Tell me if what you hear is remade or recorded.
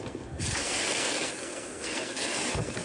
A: remade